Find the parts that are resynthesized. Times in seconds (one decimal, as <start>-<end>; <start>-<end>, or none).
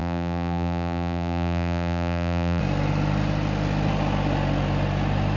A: 0.0-2.6